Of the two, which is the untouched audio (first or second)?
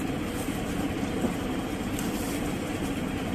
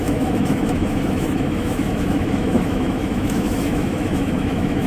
first